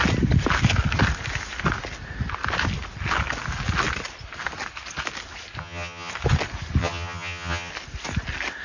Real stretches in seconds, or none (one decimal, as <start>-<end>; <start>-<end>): 0.0-5.6; 6.1-6.8; 7.7-8.6